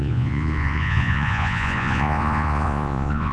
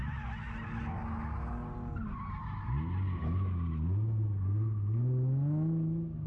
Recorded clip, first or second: second